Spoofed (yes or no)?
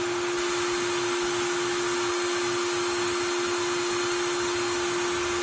no